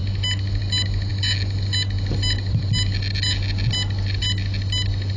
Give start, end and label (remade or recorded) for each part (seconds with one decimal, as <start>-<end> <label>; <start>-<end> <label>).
0.0-5.2 recorded